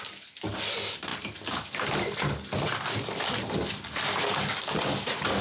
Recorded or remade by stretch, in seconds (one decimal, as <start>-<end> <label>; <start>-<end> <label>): 0.0-5.4 recorded